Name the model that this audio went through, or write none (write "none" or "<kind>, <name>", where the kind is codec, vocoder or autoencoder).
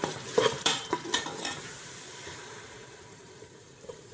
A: vocoder, BigVGAN v2